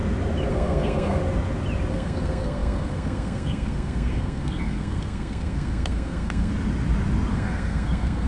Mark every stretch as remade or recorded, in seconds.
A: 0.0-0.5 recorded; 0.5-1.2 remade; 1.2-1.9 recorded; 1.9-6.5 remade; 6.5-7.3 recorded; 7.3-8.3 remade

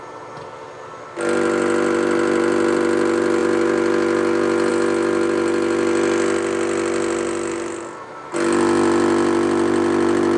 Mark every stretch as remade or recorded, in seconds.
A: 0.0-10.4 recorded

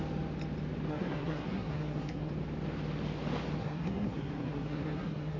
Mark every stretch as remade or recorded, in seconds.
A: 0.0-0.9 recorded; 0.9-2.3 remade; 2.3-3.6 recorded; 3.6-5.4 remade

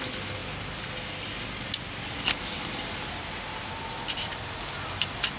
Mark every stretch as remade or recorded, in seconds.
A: 0.0-5.4 recorded

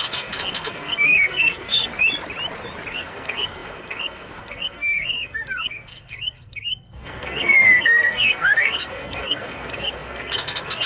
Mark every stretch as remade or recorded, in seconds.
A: 0.0-1.9 remade; 1.9-2.9 recorded; 2.9-10.9 remade

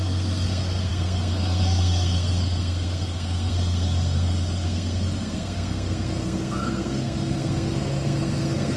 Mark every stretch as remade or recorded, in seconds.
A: 0.0-8.8 remade